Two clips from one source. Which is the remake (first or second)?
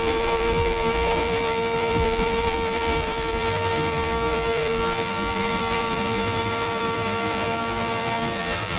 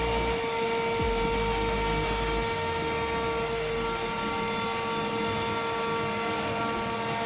first